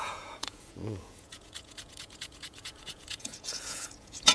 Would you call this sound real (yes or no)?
no